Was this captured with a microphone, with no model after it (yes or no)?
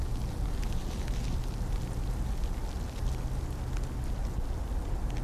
yes